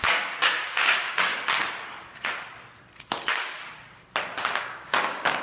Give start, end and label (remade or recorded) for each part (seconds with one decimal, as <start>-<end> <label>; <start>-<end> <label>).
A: 0.0-1.3 remade; 1.3-4.5 recorded; 4.5-5.4 remade